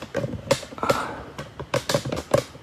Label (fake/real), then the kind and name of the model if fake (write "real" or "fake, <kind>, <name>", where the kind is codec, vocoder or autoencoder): real